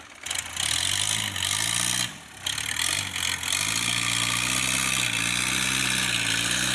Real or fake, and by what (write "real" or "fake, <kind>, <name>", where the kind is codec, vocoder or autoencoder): real